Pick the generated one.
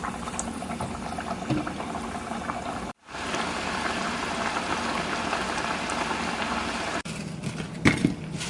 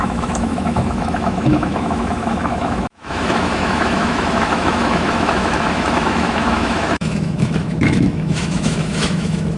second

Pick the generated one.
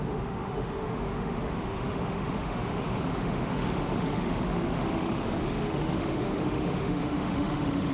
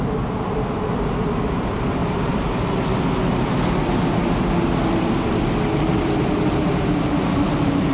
first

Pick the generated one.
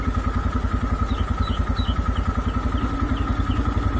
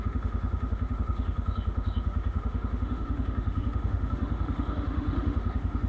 second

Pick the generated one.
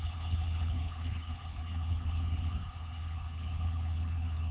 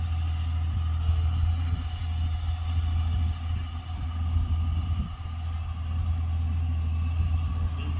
first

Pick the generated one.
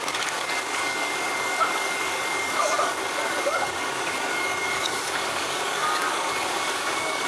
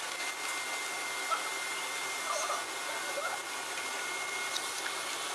first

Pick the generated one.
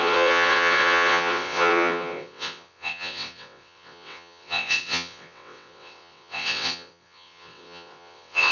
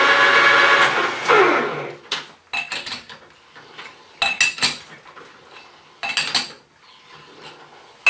first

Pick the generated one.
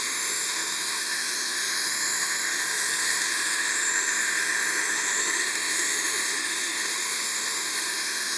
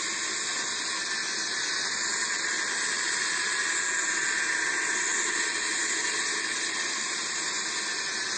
first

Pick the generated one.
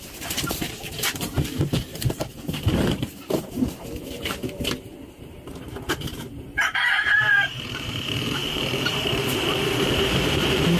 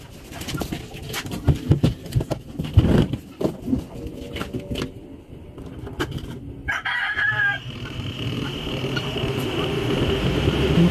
first